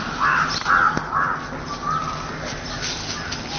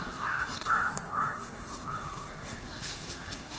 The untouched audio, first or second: first